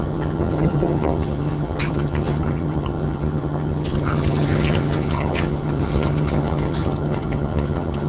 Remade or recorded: remade